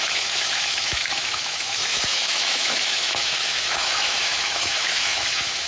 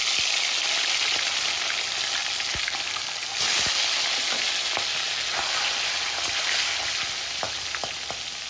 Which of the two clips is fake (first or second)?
first